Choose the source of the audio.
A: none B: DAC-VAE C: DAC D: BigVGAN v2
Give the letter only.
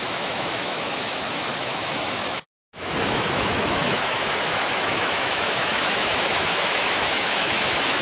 B